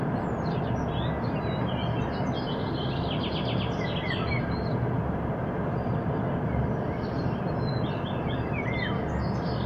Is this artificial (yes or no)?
no